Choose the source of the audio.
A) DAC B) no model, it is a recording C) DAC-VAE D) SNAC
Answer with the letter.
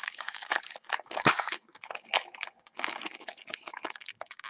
A